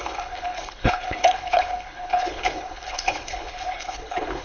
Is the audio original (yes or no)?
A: no